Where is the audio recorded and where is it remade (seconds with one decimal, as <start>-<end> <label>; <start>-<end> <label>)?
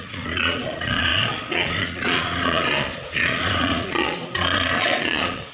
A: 0.0-5.5 remade